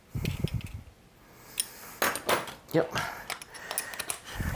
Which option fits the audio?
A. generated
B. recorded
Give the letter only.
B